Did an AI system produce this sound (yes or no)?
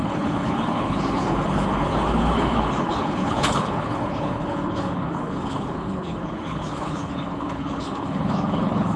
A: yes